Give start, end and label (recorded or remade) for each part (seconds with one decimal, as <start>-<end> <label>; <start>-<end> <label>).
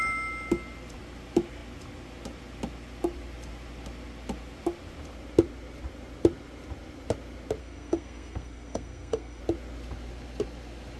0.0-7.6 recorded; 7.6-9.4 remade; 9.4-11.0 recorded